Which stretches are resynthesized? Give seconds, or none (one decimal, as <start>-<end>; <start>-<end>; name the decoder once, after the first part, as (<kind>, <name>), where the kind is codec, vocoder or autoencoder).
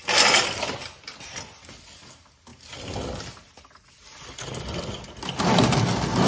none